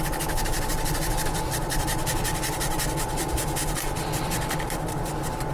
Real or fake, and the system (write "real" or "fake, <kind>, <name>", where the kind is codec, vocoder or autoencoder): fake, vocoder, BigVGAN v2